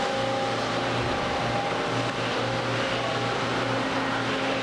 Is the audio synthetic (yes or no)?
yes